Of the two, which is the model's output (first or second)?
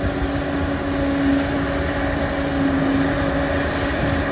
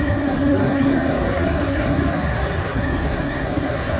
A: second